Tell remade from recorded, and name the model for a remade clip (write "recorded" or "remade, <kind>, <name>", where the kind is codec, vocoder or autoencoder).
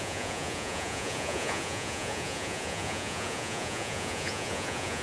remade, vocoder, Vocos